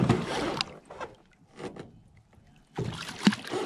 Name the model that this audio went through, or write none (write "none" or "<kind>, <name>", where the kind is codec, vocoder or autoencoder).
none